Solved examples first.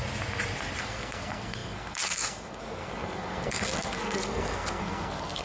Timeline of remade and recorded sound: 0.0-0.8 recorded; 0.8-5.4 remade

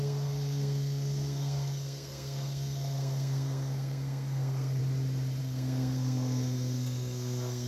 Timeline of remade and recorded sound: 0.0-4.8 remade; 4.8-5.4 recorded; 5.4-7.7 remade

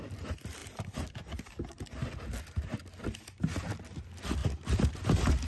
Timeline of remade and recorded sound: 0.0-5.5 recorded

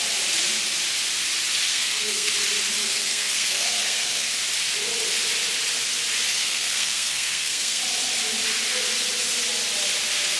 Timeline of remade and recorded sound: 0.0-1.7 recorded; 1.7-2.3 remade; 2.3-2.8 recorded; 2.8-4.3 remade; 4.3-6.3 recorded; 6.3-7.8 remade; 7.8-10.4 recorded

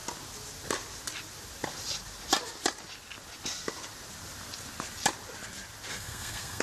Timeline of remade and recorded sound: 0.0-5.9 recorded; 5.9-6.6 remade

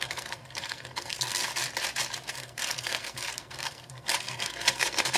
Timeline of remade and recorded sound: 0.0-1.5 remade; 1.5-2.3 recorded; 2.3-5.2 remade

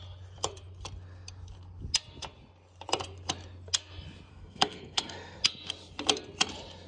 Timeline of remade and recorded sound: 0.0-4.3 recorded; 4.3-5.4 remade; 5.4-6.9 recorded

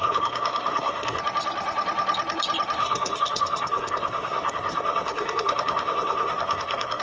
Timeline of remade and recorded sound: 0.0-1.2 remade; 1.2-2.8 recorded; 2.8-7.0 remade